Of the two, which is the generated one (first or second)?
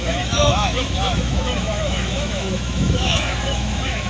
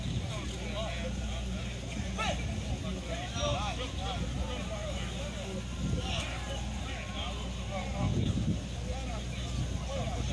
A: first